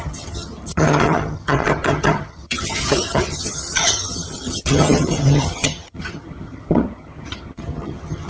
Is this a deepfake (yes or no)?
yes